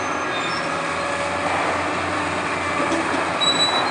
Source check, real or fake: real